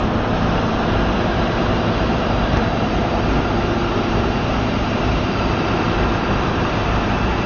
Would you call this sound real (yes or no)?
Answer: no